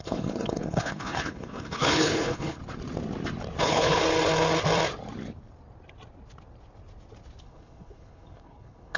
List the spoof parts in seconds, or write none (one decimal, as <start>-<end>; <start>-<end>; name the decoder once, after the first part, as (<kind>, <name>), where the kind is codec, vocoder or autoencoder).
0.0-2.6 (codec, HILCodec); 3.6-4.0; 7.4-9.0